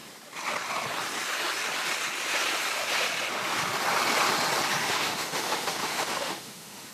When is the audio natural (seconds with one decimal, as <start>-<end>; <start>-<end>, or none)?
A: 0.0-4.8